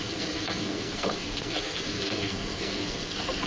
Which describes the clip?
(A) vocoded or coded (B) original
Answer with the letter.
A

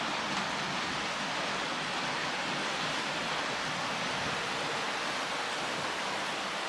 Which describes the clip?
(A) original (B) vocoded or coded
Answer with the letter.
A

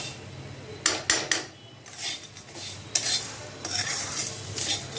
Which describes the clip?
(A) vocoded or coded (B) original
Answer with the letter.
B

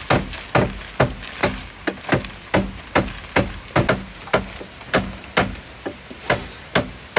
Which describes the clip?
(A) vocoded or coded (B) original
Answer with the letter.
B